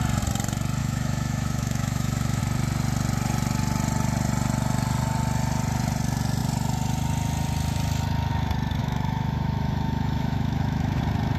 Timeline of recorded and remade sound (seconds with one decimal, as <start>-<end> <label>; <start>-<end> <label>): 0.0-0.8 recorded; 0.8-2.4 remade; 2.4-8.8 recorded; 8.8-11.0 remade; 11.0-11.4 recorded